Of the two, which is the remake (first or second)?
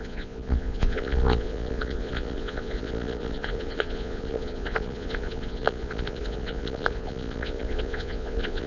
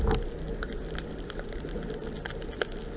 first